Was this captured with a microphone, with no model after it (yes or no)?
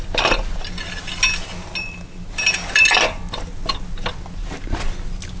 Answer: yes